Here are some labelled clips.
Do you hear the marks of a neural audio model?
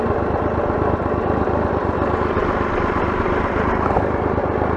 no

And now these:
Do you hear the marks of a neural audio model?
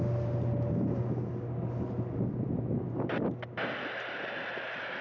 no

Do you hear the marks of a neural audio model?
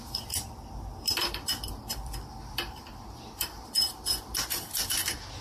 yes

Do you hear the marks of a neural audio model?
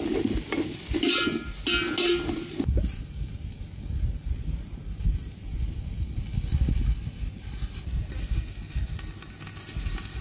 no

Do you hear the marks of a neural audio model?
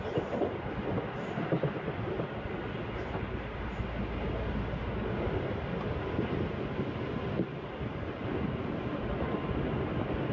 no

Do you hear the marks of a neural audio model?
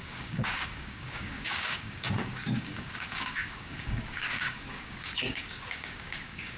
yes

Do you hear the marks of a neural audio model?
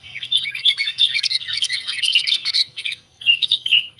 yes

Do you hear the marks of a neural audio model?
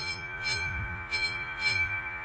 yes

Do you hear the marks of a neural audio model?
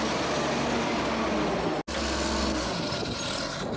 no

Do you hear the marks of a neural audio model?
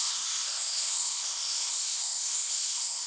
yes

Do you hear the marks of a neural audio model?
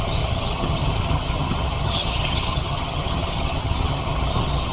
yes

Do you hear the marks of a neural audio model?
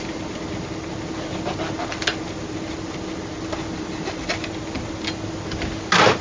no